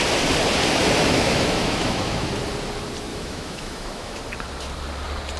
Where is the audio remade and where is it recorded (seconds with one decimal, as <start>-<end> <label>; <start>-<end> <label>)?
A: 0.0-1.0 recorded; 1.0-2.3 remade; 2.3-3.1 recorded; 3.1-4.2 remade; 4.2-5.4 recorded